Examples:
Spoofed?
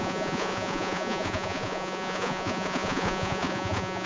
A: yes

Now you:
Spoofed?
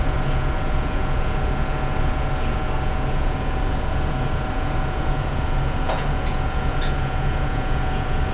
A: yes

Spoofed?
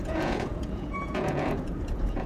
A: yes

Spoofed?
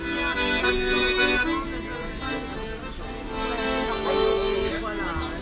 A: no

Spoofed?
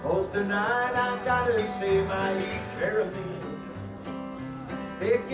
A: no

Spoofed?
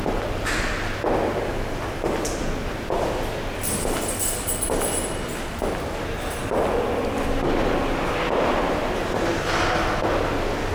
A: no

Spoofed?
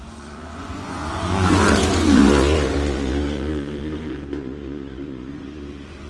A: yes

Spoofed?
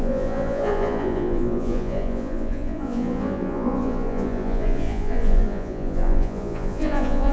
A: yes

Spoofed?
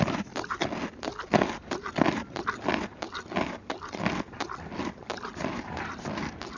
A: no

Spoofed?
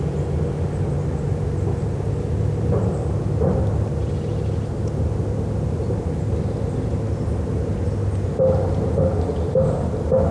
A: no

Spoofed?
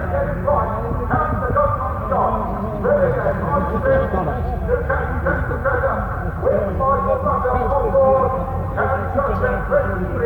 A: no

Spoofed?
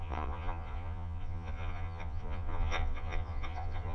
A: yes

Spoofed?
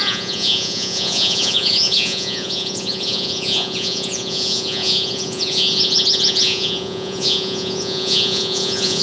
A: yes